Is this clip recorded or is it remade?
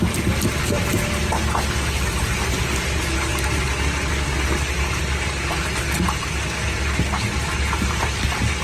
recorded